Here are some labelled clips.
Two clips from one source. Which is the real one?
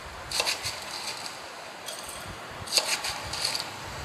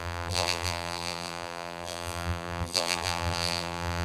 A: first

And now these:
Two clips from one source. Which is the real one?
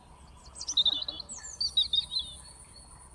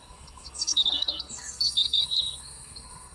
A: first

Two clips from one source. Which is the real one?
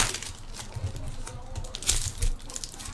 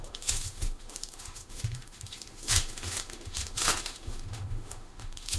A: first